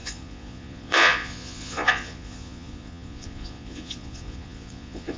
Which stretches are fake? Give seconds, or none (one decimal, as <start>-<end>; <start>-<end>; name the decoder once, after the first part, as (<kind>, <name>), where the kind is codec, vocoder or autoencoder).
0.0-5.2 (vocoder, Vocos)